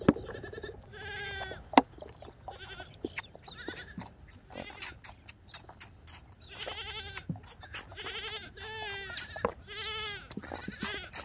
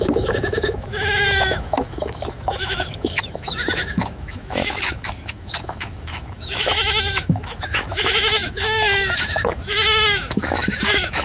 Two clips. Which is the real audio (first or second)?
first